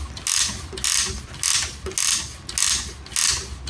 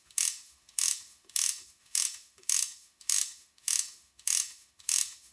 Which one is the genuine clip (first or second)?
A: first